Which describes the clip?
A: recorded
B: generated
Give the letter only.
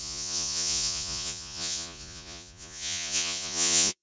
B